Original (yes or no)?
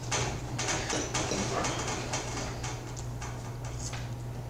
yes